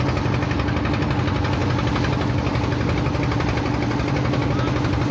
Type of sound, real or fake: real